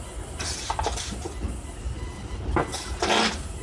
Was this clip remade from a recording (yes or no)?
no